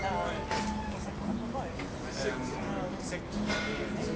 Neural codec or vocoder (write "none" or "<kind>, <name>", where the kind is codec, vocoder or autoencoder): none